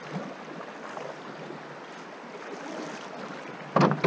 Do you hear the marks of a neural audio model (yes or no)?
no